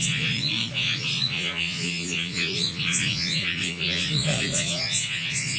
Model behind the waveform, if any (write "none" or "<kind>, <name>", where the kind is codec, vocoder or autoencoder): vocoder, Vocos